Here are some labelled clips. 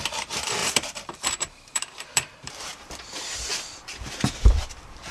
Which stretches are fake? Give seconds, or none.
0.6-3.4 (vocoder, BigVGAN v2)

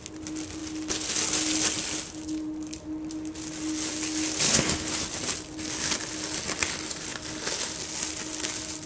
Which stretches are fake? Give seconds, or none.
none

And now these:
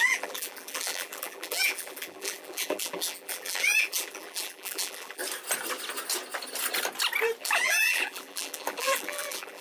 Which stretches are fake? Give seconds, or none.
0.0-5.2 (vocoder, BigVGAN v2); 7.4-9.6

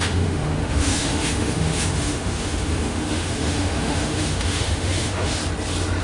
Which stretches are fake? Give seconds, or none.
0.0-5.4 (autoencoder, DAC-VAE)